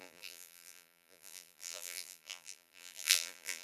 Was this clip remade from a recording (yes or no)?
yes